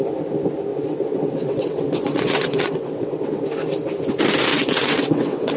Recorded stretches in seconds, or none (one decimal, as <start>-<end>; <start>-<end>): 0.0-0.7; 3.4-4.5